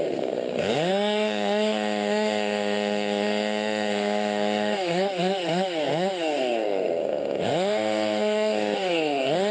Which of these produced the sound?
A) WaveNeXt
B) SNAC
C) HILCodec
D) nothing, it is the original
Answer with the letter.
B